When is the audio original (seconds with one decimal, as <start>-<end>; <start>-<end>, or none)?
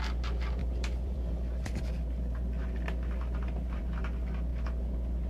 0.0-0.6; 3.8-5.3